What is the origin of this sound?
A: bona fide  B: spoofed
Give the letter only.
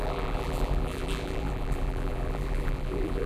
B